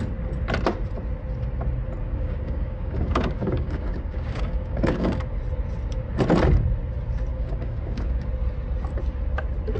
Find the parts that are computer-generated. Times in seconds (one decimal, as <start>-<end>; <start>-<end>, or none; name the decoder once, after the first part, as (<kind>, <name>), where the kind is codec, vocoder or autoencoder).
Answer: 2.0-5.2 (codec, DAC); 7.3-8.3